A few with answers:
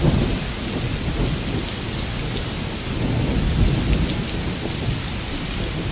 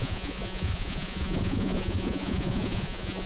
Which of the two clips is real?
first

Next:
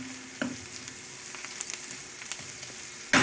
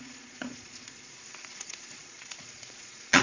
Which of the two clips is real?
first